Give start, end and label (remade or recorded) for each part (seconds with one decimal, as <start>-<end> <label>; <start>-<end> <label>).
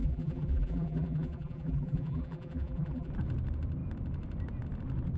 0.0-3.1 remade; 3.1-5.2 recorded